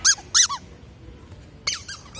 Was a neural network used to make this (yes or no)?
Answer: no